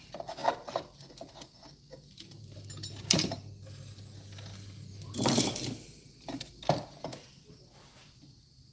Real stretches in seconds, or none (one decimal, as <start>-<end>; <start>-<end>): 0.0-8.7